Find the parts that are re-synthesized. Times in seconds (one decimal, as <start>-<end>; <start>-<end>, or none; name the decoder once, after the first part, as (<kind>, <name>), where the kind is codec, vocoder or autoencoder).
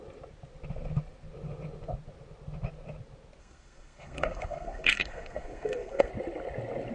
3.4-6.1 (codec, SNAC)